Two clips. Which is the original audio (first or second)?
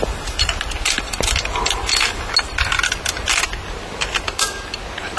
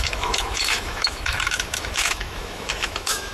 first